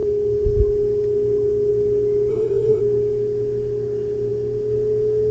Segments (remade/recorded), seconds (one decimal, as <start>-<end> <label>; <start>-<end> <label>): 0.0-2.3 recorded; 2.3-2.8 remade; 2.8-5.3 recorded